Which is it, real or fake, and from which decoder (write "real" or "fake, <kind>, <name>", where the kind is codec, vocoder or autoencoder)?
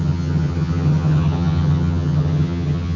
fake, vocoder, HiFi-GAN